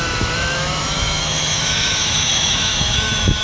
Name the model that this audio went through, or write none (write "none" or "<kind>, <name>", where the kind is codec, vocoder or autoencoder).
autoencoder, DAC-VAE